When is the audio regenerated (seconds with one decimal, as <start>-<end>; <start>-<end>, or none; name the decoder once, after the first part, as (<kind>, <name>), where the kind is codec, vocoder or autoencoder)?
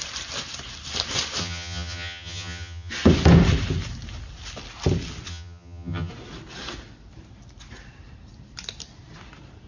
1.4-2.9 (vocoder, HiFi-GAN); 5.3-6.1